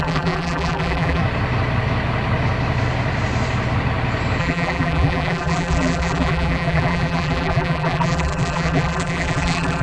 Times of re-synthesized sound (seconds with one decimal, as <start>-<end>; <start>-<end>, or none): 0.0-1.2; 4.4-9.8

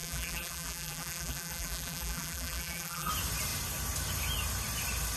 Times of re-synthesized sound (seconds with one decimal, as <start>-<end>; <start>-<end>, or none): 0.0-3.1

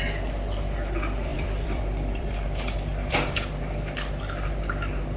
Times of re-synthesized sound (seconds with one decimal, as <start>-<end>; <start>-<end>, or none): 1.3-2.3; 2.9-3.6

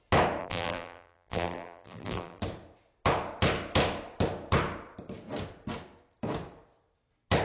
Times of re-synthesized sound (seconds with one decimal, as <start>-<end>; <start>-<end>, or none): 0.4-2.4

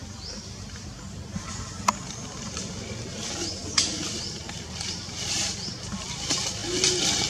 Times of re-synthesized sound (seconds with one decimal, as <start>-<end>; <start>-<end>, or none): 2.3-6.6

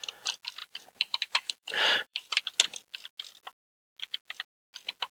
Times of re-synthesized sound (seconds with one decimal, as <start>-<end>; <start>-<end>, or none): 0.6-2.4

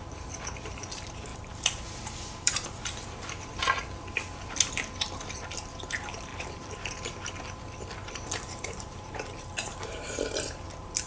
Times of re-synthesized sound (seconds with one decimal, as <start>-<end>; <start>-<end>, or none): 1.3-3.2; 6.3-7.3; 8.0-11.1